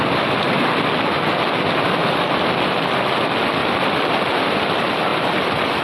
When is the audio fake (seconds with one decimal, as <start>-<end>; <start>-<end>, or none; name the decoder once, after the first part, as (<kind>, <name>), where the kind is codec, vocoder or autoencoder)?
2.0-2.9 (vocoder, BigVGAN v2); 3.6-4.6